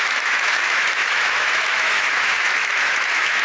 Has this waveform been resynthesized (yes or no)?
yes